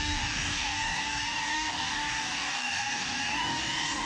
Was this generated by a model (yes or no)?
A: yes